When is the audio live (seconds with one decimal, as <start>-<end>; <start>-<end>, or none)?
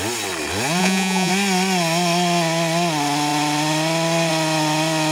0.0-0.8; 1.3-5.1